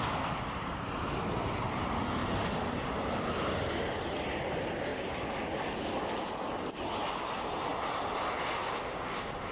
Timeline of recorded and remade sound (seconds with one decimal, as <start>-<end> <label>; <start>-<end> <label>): 0.0-9.5 recorded